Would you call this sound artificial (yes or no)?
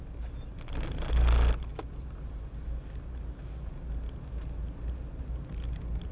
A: no